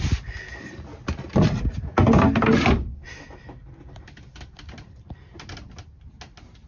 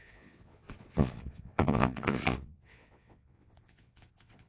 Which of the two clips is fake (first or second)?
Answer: second